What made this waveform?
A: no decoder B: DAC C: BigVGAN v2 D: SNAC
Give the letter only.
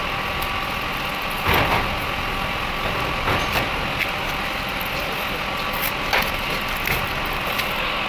A